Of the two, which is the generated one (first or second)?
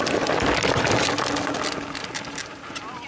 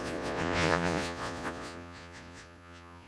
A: second